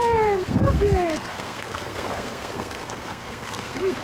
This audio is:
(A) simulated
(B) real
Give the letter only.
A